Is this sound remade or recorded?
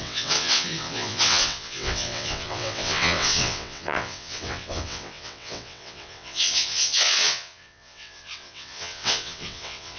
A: remade